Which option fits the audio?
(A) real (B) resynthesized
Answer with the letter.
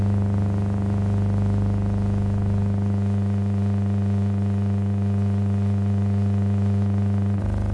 A